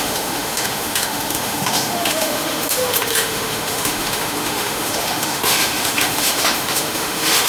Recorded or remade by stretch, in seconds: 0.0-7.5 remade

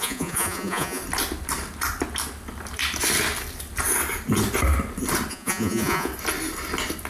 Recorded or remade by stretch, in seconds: 0.0-1.0 remade; 1.0-5.3 recorded; 5.3-6.1 remade; 6.1-7.1 recorded